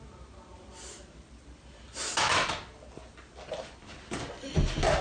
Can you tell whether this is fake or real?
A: real